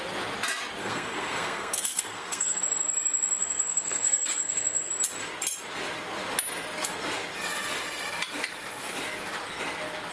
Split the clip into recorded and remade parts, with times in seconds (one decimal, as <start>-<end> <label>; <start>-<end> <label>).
0.0-0.8 recorded; 0.8-2.6 remade; 2.6-3.4 recorded; 3.4-4.9 remade; 4.9-10.1 recorded